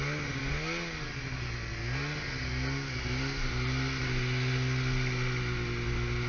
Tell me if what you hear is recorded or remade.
recorded